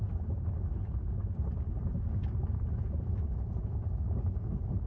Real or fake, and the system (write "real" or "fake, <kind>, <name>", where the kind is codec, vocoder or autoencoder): real